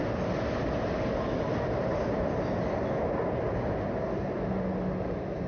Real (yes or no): yes